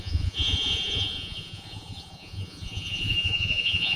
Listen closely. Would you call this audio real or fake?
fake